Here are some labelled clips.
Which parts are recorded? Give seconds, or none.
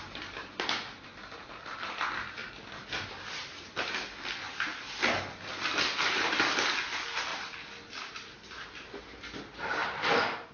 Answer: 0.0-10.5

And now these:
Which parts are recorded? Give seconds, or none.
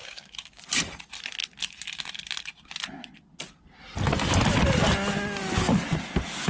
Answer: 0.6-6.5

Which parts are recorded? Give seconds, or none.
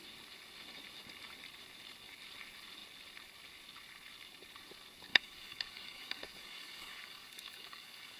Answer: 0.0-5.1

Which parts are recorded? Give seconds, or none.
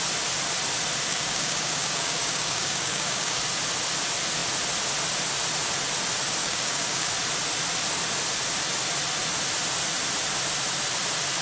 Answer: 0.0-1.1; 3.4-6.4; 7.1-11.4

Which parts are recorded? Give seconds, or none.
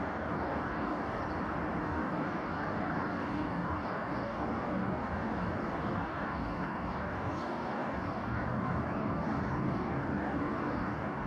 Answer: 1.2-1.8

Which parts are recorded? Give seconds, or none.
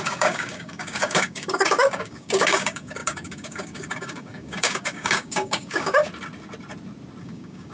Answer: 6.1-7.2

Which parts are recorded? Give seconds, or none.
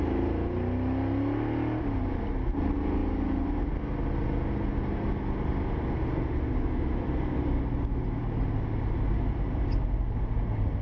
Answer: 0.0-10.8